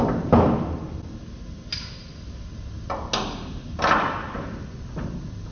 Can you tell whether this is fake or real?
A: real